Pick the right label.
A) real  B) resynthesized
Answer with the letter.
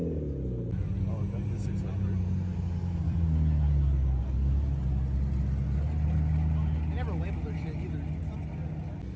A